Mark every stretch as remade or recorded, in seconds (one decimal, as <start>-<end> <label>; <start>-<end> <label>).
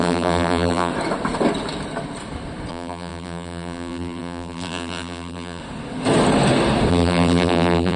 0.0-0.9 remade; 0.9-2.7 recorded; 2.7-5.6 remade; 5.6-6.9 recorded; 6.9-8.0 remade